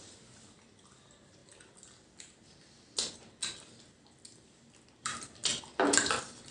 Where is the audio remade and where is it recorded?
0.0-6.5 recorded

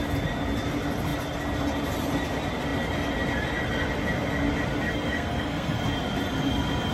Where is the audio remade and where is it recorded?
0.0-5.1 recorded; 5.1-5.8 remade; 5.8-6.9 recorded